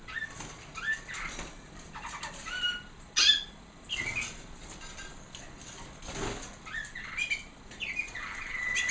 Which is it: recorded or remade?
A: recorded